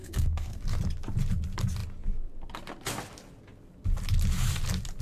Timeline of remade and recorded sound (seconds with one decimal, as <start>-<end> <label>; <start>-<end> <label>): 0.0-0.6 remade; 0.6-5.0 recorded